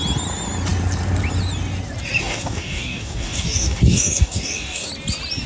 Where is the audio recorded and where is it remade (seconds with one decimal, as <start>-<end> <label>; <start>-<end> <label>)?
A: 0.0-2.2 recorded; 2.2-4.9 remade; 4.9-5.5 recorded